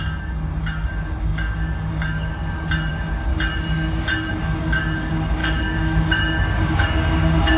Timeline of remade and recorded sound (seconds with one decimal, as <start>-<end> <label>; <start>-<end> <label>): 0.0-2.4 remade; 2.4-2.9 recorded; 2.9-3.3 remade; 3.3-4.3 recorded; 4.3-7.6 remade